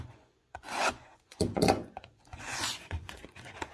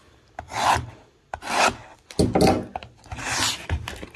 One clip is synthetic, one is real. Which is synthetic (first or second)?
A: first